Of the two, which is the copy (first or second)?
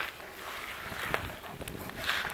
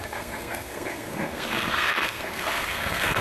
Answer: second